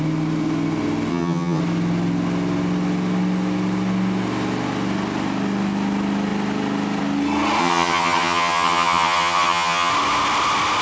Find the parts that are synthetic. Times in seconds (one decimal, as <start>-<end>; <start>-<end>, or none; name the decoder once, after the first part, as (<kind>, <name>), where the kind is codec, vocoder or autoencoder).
1.1-1.6 (vocoder, HiFi-GAN); 7.6-9.9